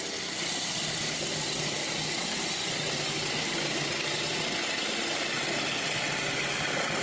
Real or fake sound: real